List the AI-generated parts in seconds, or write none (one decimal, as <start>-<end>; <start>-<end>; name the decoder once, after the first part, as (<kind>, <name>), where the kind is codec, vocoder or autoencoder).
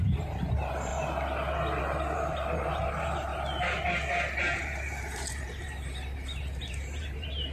0.0-0.9 (vocoder, BigVGAN v2); 1.8-3.3; 4.4-7.5